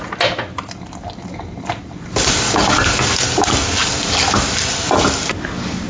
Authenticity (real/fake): real